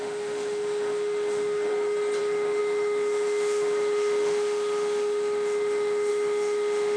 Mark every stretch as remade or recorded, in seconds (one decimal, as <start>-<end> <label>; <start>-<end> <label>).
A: 0.0-1.7 remade; 1.7-2.2 recorded; 2.2-7.0 remade